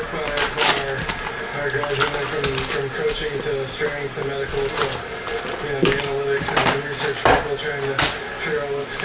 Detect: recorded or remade recorded